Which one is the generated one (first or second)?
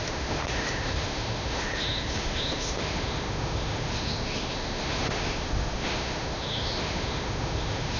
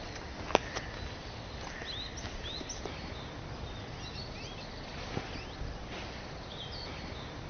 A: first